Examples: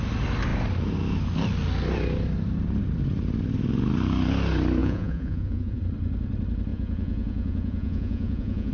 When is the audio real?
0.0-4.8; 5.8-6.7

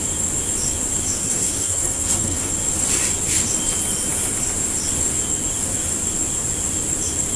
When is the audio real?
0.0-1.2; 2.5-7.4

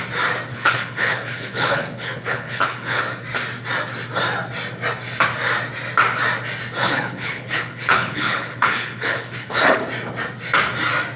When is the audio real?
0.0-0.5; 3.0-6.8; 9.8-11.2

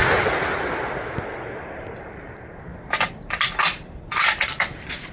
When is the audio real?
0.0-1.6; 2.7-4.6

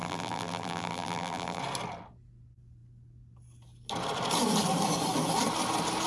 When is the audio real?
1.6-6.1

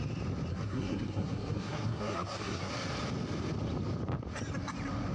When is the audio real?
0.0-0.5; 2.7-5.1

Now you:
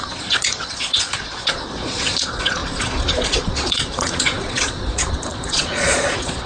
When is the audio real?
none